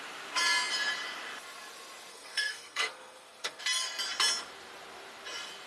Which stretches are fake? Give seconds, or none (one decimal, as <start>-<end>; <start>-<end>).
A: 2.1-3.6